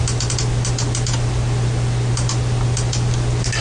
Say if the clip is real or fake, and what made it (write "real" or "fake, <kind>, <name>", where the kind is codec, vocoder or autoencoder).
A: real